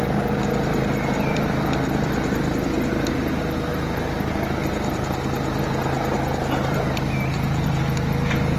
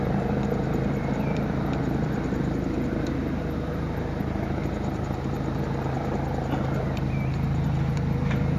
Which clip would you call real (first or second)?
first